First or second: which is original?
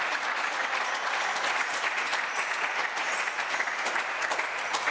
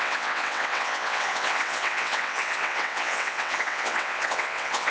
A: first